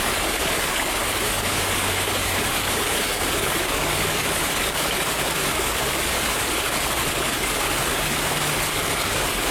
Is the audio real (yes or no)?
no